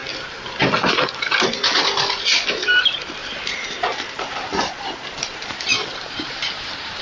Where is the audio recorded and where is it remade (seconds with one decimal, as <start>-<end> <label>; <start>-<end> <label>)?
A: 0.0-2.8 recorded; 2.8-3.2 remade; 3.2-4.1 recorded; 4.1-7.0 remade